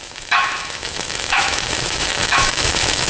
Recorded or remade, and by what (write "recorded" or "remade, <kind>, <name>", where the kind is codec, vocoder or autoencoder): remade, autoencoder, DAC-VAE